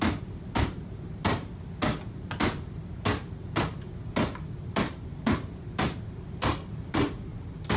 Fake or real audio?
real